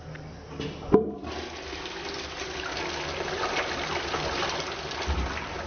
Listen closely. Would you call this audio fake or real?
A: real